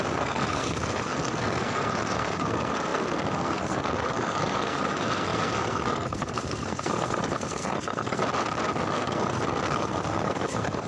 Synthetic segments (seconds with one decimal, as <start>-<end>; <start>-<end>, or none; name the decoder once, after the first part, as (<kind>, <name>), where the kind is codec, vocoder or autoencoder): 0.0-8.2 (codec, SNAC); 8.8-10.9